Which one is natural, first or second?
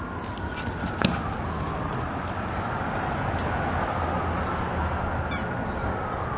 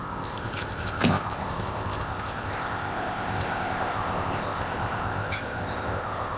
first